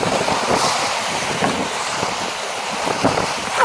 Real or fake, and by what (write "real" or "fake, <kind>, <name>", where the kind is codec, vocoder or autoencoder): real